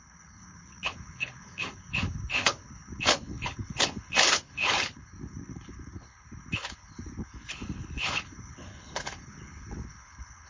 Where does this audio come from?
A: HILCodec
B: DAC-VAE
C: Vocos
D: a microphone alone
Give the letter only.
A